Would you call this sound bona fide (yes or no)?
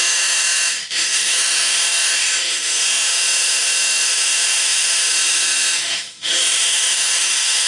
no